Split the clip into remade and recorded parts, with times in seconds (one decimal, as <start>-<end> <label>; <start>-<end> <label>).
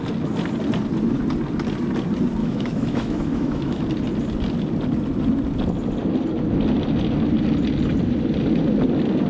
0.0-2.4 recorded; 2.4-3.8 remade; 3.8-9.3 recorded